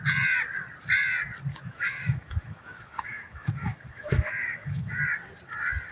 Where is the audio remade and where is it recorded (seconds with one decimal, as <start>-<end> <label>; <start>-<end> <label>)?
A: 0.0-1.5 recorded; 1.5-5.0 remade; 5.0-5.9 recorded